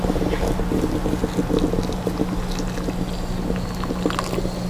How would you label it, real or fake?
real